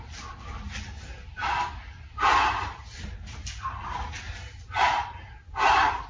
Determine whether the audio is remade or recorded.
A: recorded